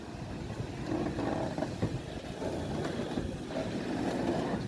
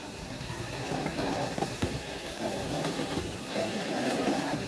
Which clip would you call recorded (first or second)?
first